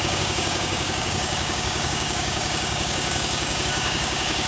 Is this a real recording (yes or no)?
no